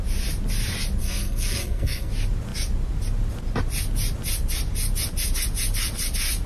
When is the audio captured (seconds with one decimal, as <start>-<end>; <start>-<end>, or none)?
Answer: 0.0-1.0; 2.1-6.5

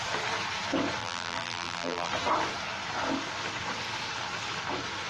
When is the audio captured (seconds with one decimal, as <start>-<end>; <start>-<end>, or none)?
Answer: 0.0-1.0; 2.1-5.1